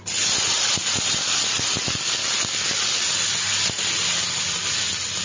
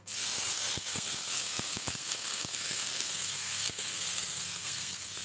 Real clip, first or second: first